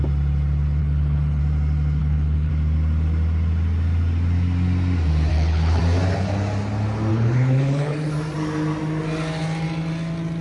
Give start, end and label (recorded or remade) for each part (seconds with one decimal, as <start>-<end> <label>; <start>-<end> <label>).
0.0-0.8 recorded; 0.8-1.4 remade; 1.4-2.0 recorded; 2.0-2.5 remade; 2.5-5.3 recorded; 5.3-5.8 remade; 5.8-7.1 recorded; 7.1-8.1 remade; 8.1-10.4 recorded